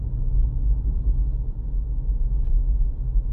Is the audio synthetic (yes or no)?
no